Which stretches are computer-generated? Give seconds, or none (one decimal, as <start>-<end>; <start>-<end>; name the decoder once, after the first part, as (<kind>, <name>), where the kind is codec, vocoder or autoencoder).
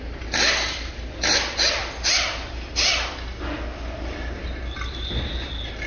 none